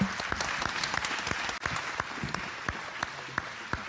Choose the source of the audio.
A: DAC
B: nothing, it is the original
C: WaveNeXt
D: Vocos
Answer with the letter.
B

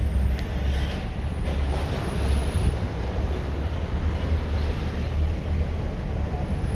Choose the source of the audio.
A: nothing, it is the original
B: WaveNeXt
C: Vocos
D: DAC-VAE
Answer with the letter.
A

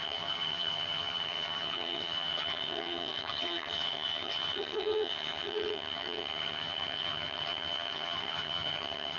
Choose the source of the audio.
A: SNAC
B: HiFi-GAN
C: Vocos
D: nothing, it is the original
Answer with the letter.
B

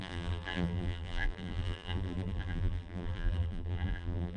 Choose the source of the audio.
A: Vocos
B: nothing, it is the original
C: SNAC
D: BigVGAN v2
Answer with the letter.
D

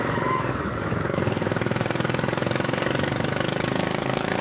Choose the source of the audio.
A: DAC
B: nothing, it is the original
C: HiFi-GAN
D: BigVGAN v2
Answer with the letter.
A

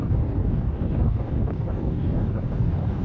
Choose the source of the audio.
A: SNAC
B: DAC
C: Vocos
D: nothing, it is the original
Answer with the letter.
B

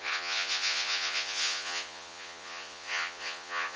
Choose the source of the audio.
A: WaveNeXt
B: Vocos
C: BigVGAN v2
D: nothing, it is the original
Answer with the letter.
B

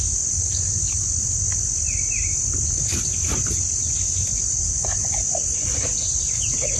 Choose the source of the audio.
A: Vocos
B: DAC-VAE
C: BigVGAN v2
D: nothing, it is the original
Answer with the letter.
D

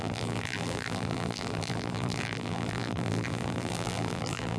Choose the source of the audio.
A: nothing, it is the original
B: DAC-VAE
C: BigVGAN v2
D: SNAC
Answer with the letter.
C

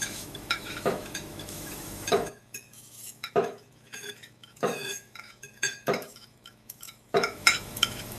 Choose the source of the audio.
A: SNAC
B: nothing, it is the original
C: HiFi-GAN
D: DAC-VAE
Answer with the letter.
D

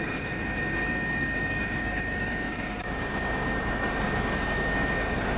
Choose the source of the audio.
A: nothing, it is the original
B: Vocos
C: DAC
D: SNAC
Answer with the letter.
C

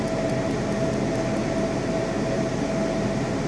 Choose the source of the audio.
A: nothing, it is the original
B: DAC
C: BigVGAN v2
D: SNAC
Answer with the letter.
A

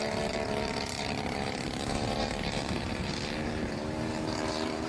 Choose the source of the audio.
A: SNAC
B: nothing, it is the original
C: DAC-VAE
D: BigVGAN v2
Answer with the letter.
D